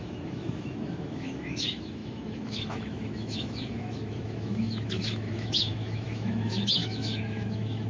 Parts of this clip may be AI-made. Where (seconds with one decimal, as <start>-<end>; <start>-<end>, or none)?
0.0-7.9